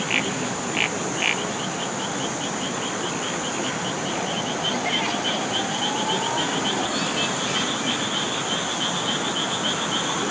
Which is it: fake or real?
real